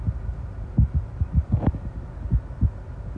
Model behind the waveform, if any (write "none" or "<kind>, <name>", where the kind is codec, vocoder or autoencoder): none